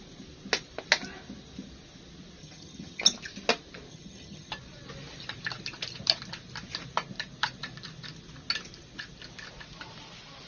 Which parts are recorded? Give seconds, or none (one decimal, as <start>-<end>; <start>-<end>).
0.0-2.4; 3.0-3.9; 4.5-10.5